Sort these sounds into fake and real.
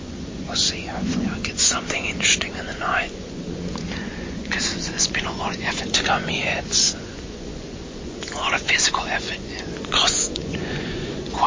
fake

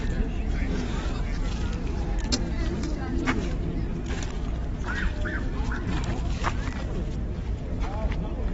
real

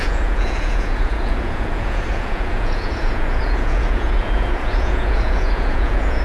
fake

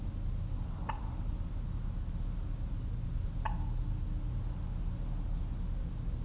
real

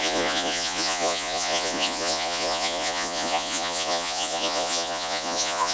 fake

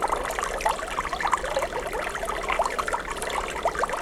real